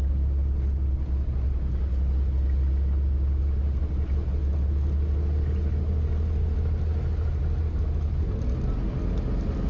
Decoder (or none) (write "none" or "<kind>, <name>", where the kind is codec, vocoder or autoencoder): none